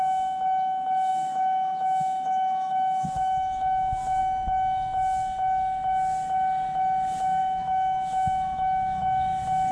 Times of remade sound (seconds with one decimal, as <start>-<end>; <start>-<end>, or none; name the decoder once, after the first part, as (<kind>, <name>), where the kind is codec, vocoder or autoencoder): 1.1-4.2 (autoencoder, DAC-VAE); 7.4-9.0